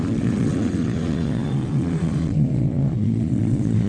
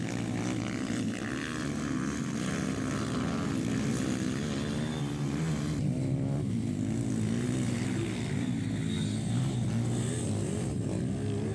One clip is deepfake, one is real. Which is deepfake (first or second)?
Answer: first